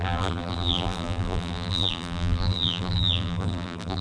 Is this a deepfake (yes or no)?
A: yes